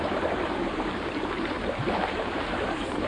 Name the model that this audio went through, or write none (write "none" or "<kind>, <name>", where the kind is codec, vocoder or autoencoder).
vocoder, BigVGAN v2